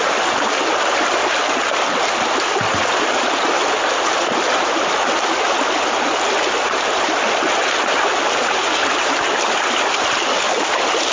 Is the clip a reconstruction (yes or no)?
no